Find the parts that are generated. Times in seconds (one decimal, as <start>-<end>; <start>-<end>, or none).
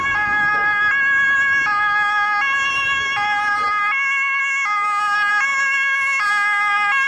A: none